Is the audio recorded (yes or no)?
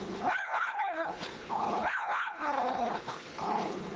no